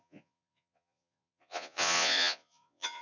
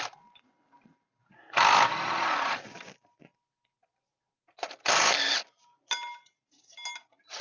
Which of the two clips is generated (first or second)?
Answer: first